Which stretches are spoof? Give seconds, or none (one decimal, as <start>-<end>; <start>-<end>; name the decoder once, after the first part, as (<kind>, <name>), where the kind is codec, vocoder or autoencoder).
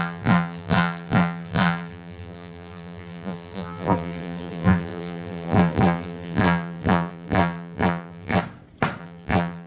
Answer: 0.0-8.4 (vocoder, BigVGAN v2); 9.0-9.7